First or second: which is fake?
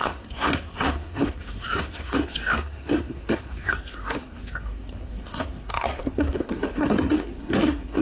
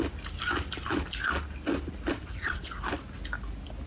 first